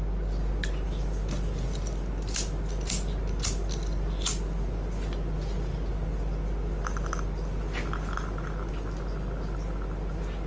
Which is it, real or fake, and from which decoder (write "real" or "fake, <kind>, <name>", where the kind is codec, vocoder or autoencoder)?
real